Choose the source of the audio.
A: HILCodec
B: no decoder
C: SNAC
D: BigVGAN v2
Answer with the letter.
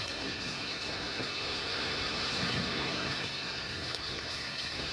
C